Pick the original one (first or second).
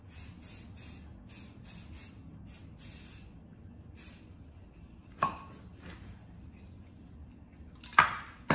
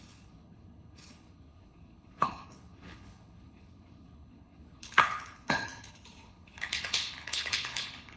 first